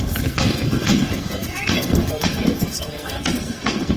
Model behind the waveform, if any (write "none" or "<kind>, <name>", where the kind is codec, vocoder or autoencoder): codec, SNAC